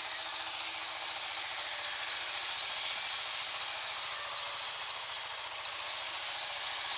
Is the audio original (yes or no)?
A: yes